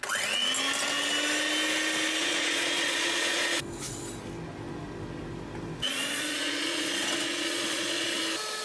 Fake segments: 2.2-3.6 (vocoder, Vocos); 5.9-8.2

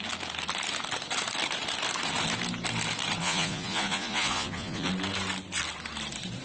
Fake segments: 3.2-4.9 (vocoder, Vocos)